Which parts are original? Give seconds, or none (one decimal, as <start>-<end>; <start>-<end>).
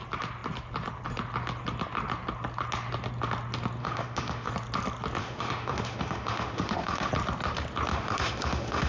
0.0-3.8; 4.5-5.2; 7.1-7.9